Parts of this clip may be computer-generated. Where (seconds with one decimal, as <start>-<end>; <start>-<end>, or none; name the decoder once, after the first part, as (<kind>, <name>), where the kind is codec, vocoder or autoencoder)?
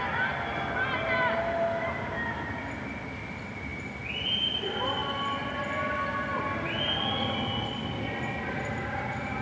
none